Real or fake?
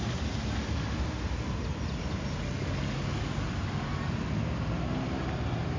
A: real